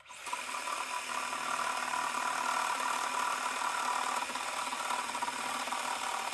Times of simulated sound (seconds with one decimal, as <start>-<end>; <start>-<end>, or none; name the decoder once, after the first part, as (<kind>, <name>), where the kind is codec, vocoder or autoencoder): none

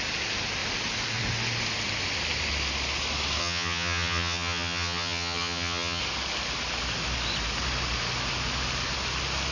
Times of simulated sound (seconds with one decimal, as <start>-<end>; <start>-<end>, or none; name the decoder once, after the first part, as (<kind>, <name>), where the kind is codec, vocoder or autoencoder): 3.4-6.0 (vocoder, HiFi-GAN)

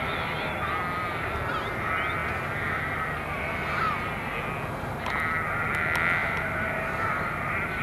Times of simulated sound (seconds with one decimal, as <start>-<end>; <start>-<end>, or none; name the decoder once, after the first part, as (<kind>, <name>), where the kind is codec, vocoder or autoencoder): 6.2-7.8 (vocoder, BigVGAN v2)

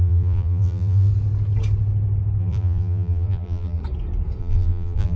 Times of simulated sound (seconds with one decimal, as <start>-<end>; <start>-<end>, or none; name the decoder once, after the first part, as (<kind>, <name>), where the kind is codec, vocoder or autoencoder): 0.0-1.1 (vocoder, BigVGAN v2); 2.4-3.8; 4.4-5.2

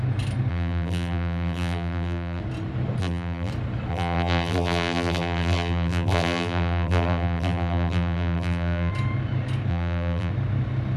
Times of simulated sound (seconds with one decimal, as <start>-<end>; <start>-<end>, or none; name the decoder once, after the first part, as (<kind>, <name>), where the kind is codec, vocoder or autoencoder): 0.5-2.4 (vocoder, BigVGAN v2); 3.0-3.5; 3.9-8.9; 9.7-10.3

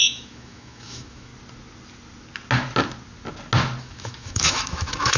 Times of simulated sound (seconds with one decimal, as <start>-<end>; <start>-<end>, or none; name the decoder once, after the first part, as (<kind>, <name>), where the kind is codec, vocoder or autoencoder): 0.0-1.3 (autoencoder, DAC-VAE); 3.8-5.2